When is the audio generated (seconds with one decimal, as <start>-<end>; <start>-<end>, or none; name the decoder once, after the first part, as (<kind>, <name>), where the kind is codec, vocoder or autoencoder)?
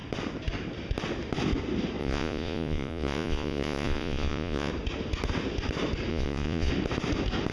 2.0-4.7 (vocoder, Vocos); 6.1-6.7